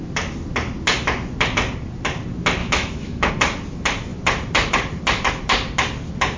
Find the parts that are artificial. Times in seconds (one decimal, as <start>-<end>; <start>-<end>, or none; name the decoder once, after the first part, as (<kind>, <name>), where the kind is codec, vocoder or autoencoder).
2.6-3.3 (autoencoder, DAC-VAE)